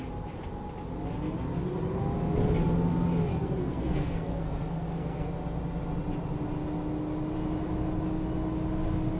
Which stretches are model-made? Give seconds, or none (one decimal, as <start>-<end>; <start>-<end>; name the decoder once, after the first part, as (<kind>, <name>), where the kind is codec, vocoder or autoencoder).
3.3-5.3 (codec, SNAC)